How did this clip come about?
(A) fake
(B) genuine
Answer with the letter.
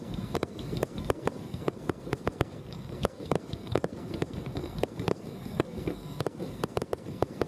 A